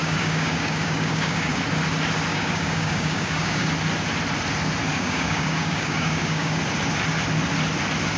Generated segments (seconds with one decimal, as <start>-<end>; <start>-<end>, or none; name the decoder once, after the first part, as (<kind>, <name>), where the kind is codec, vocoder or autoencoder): 0.0-1.6 (codec, DAC); 2.3-3.7; 4.9-6.6